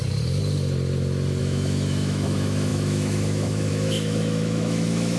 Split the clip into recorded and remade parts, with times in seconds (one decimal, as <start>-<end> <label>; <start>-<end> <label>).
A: 0.0-1.4 recorded; 1.4-5.2 remade

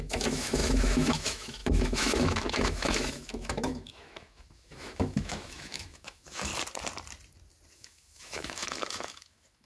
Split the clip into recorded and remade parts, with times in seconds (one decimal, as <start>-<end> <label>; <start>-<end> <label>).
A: 0.0-6.5 remade; 6.5-7.7 recorded; 7.7-9.7 remade

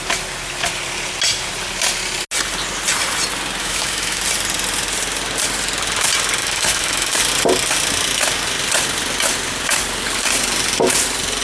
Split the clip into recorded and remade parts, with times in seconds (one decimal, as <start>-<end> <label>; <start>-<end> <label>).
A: 0.0-3.6 recorded; 3.6-4.2 remade; 4.2-6.4 recorded; 6.4-7.1 remade; 7.1-11.4 recorded

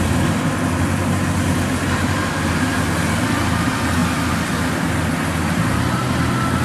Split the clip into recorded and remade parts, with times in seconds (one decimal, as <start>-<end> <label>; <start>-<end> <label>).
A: 0.0-6.6 recorded

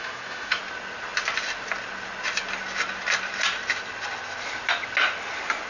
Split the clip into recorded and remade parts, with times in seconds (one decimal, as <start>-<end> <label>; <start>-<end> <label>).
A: 0.0-0.6 remade; 0.6-5.7 recorded

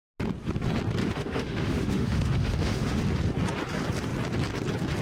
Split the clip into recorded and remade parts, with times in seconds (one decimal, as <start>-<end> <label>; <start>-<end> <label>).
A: 0.0-1.0 recorded; 1.0-3.0 remade; 3.0-5.0 recorded

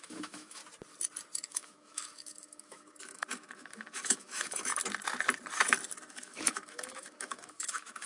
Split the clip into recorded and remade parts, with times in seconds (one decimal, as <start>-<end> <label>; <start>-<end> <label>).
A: 0.0-0.6 remade; 0.6-1.5 recorded; 1.5-4.7 remade; 4.7-6.1 recorded; 6.1-8.1 remade